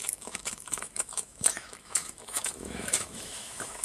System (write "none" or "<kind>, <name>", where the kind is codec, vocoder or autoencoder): autoencoder, DAC-VAE